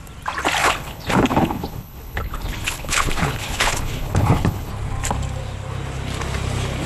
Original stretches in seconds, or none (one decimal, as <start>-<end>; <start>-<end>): 0.0-0.6; 4.7-6.9